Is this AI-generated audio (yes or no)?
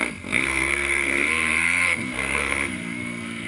yes